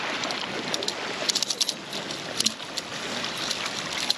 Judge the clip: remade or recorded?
recorded